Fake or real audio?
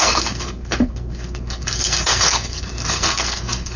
fake